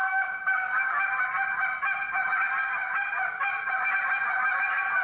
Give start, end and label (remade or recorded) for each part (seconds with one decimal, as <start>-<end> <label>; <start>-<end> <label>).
0.0-0.9 remade; 0.9-5.0 recorded